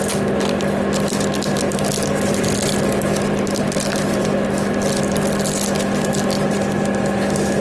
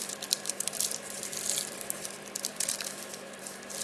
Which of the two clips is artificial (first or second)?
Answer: second